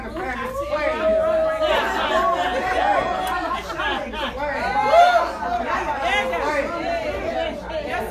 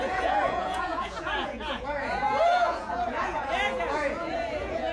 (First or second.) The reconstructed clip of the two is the second